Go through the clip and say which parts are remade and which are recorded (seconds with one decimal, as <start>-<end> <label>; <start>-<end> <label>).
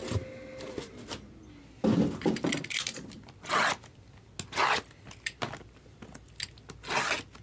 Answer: 0.0-7.4 recorded